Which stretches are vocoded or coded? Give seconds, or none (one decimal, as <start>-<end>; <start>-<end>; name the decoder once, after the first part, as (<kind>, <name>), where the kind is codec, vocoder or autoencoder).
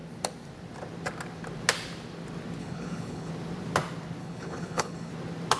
2.6-3.3 (codec, HILCodec); 4.2-5.1